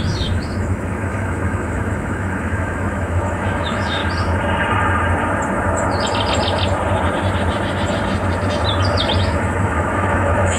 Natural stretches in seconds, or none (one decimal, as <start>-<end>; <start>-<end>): 4.0-9.2